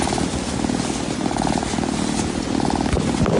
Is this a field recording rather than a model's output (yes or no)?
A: yes